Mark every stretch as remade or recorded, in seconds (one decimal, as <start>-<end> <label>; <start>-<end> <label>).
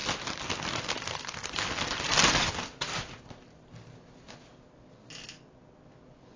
0.0-6.4 recorded